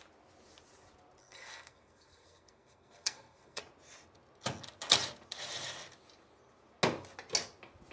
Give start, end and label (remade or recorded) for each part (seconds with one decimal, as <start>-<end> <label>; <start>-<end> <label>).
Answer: 0.0-1.2 recorded; 1.2-3.6 remade; 3.6-7.9 recorded